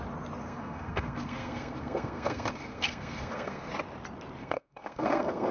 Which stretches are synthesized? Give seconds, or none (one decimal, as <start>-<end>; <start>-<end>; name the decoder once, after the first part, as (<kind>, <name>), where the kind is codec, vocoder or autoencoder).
0.4-3.7 (codec, SNAC); 4.4-5.5